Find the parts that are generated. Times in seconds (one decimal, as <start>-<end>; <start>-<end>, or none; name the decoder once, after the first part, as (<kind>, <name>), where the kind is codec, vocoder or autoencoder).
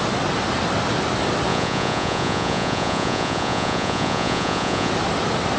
1.5-4.9 (vocoder, Vocos)